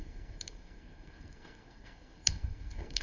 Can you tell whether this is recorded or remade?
remade